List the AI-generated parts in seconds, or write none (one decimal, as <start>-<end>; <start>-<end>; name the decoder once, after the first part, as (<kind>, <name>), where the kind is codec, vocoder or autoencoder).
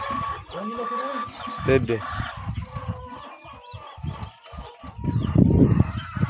none